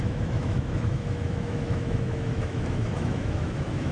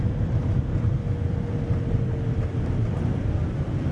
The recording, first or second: second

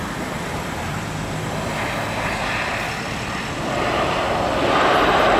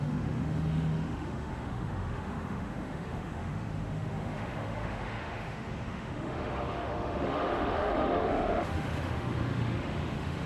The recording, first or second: first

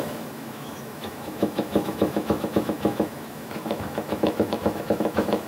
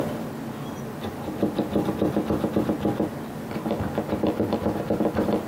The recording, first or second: second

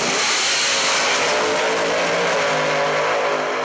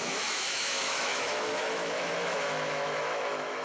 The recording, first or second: first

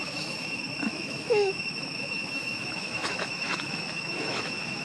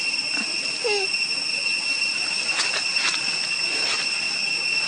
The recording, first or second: second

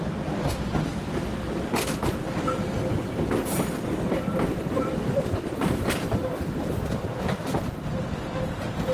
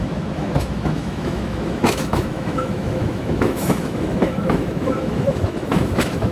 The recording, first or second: first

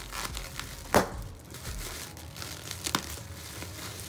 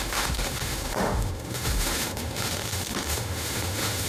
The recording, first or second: first